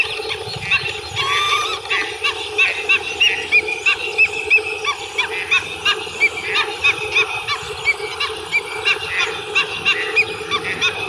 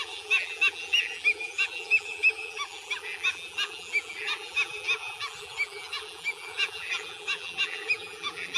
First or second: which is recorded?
first